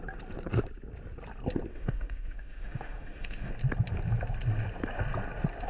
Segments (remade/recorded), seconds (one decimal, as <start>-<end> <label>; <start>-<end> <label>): 0.0-1.7 recorded; 1.7-3.5 remade; 3.5-5.7 recorded